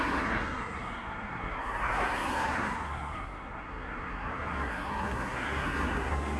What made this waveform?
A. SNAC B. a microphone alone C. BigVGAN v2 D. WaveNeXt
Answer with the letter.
A